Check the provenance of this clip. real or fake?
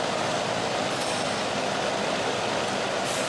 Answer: real